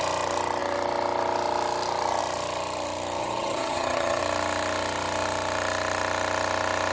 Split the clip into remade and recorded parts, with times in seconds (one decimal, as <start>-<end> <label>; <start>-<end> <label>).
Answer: 0.0-3.2 recorded; 3.2-4.2 remade; 4.2-6.9 recorded